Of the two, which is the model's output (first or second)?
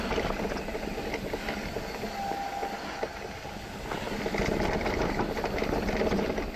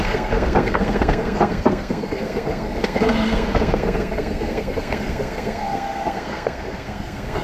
second